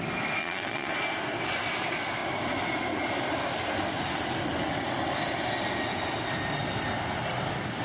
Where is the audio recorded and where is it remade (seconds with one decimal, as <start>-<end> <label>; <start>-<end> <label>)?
0.0-0.4 recorded; 0.4-0.9 remade; 0.9-7.8 recorded